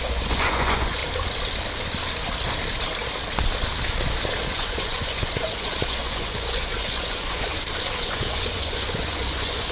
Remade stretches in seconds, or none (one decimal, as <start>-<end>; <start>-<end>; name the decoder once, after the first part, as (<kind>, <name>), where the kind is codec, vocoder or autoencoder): 0.0-1.0 (vocoder, Vocos); 4.5-7.5; 8.0-9.7